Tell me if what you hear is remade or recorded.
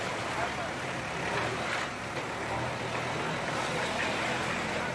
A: recorded